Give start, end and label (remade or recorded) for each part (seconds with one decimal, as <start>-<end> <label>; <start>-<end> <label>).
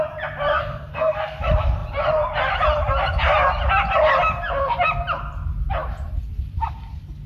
0.0-0.5 recorded; 0.5-1.4 remade; 1.4-7.3 recorded